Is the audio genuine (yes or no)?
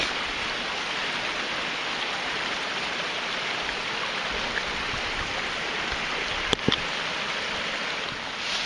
yes